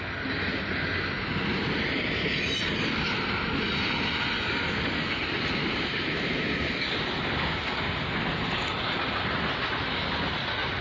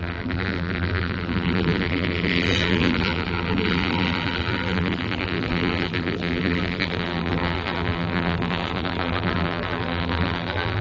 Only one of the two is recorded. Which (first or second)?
first